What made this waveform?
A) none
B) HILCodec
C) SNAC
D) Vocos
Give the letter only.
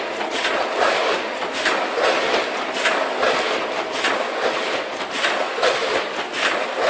A